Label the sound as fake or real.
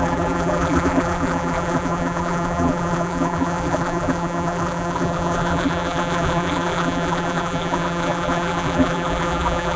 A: fake